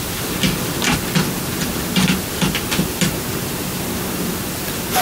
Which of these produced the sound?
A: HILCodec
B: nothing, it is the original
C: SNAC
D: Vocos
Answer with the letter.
B